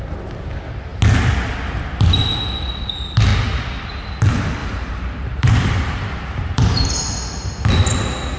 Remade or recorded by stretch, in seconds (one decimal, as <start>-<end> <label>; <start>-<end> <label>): 0.0-4.6 recorded; 4.6-7.0 remade; 7.0-8.4 recorded